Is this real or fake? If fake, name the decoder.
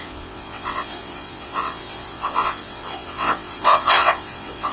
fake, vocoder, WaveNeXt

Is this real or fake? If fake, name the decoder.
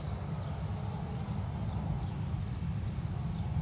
real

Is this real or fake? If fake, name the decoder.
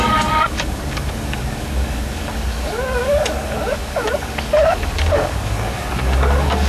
fake, codec, DAC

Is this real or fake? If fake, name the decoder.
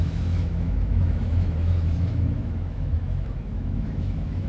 fake, autoencoder, DAC-VAE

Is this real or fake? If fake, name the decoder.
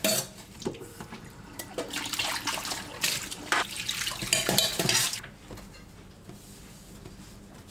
fake, vocoder, BigVGAN v2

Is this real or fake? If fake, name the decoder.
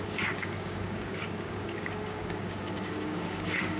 fake, codec, DAC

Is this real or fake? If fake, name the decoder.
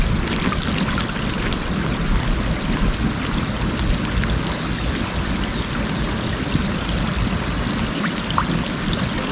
real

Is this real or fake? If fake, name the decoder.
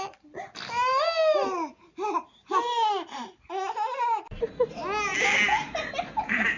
real